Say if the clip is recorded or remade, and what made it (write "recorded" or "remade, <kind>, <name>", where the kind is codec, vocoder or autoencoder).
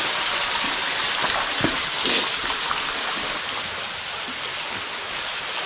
recorded